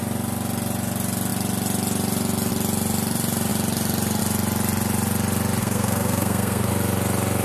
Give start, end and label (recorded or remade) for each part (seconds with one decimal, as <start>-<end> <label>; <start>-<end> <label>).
0.0-5.6 recorded; 5.6-6.7 remade; 6.7-7.4 recorded